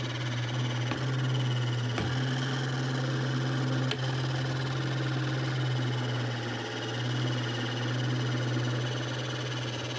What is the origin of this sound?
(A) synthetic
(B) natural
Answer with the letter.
B